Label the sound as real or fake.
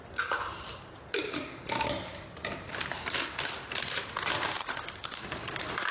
fake